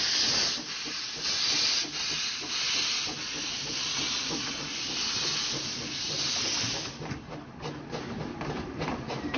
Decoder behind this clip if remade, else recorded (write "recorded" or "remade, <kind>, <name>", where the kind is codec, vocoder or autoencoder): recorded